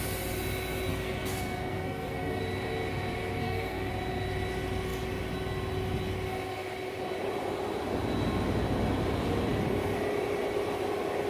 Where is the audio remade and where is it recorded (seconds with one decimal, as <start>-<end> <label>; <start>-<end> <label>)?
0.0-0.9 recorded; 0.9-2.4 remade; 2.4-3.4 recorded; 3.4-3.9 remade; 3.9-11.3 recorded